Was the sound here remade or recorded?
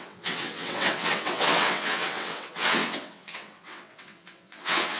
remade